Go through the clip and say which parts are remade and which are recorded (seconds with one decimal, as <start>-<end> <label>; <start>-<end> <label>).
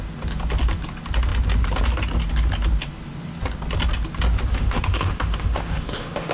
0.0-4.5 recorded; 4.5-6.3 remade